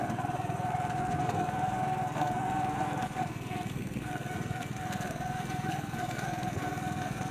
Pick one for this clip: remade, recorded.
remade